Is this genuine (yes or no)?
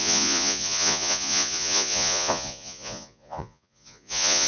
no